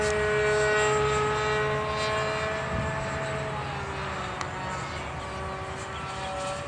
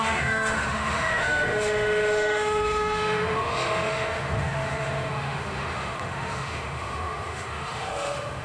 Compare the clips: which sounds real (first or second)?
first